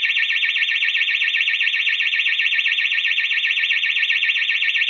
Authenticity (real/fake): fake